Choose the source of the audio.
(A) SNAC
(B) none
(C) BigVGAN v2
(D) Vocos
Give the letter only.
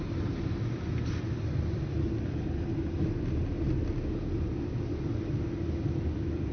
B